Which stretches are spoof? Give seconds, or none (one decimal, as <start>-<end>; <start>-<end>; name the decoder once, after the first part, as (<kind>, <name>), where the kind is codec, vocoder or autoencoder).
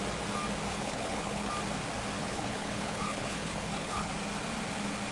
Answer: 0.7-1.5 (codec, HILCodec); 2.2-4.1